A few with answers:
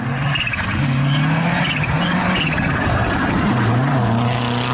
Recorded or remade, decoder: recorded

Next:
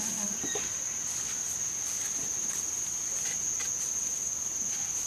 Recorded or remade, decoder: recorded